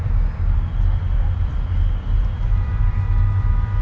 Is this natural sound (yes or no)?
no